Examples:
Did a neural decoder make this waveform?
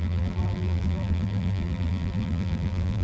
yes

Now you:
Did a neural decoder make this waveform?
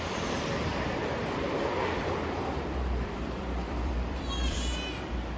yes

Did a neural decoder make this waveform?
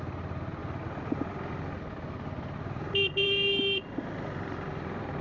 yes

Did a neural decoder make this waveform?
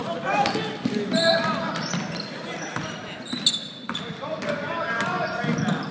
no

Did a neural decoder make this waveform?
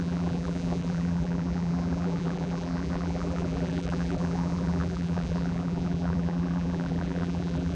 yes